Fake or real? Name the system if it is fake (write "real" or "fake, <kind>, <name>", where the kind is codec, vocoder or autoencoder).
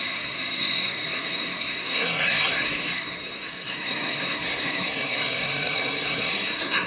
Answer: fake, codec, SNAC